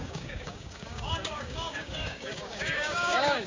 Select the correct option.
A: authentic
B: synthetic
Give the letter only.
B